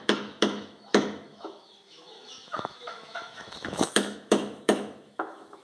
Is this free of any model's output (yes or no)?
no